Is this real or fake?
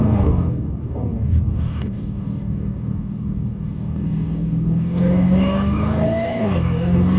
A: fake